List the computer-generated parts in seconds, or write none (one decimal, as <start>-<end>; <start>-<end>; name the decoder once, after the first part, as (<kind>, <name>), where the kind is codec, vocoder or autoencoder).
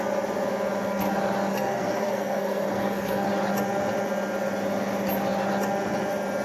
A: 1.5-3.3 (codec, SNAC)